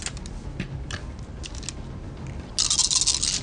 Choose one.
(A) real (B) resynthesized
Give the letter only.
A